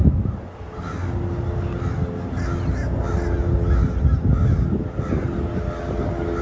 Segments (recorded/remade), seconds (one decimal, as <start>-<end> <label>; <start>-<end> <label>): 0.0-6.4 recorded